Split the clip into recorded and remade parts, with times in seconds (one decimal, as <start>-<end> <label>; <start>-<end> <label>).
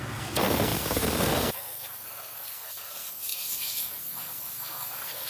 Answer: 0.0-5.3 remade